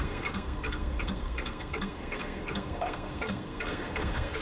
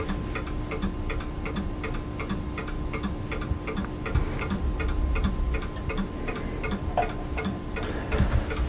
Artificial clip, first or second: first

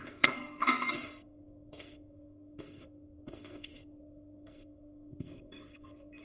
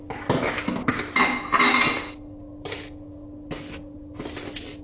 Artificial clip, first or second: first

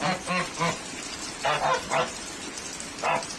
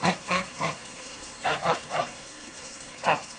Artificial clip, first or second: second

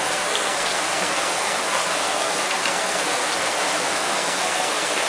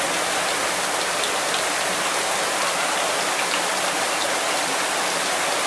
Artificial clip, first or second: first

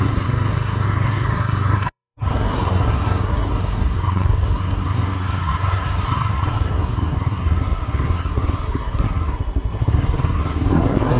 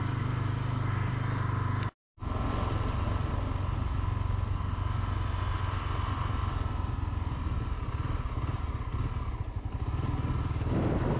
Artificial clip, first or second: first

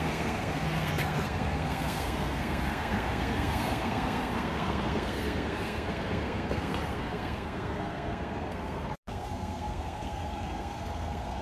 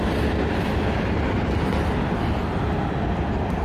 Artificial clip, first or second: first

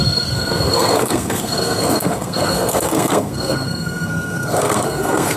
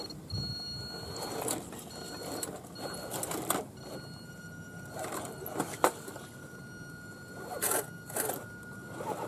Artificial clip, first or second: first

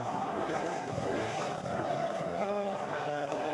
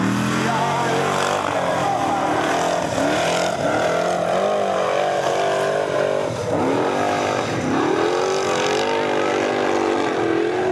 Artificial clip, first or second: first